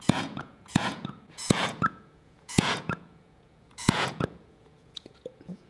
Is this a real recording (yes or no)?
no